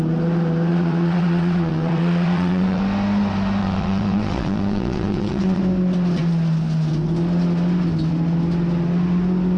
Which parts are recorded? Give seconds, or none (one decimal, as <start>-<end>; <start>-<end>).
0.0-0.7; 2.8-3.6; 5.6-9.6